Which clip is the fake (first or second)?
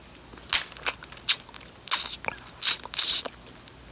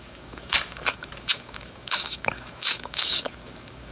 second